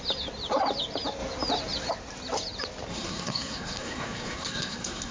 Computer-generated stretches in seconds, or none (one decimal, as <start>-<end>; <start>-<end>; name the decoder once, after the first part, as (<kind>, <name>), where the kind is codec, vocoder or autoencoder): 2.9-5.1 (codec, SNAC)